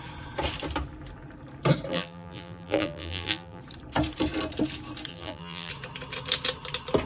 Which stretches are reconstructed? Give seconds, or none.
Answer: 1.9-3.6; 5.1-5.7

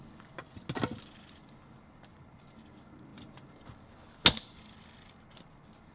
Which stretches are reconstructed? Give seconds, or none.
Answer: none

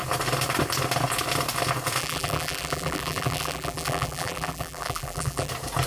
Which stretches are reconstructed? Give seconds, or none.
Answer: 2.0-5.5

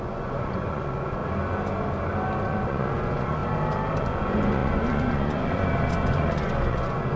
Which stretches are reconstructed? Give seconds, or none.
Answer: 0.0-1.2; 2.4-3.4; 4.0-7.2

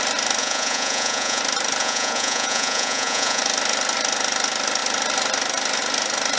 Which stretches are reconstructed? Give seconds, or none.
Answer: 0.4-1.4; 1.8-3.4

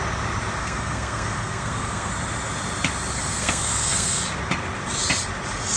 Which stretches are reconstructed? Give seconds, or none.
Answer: 0.6-2.1; 3.3-4.2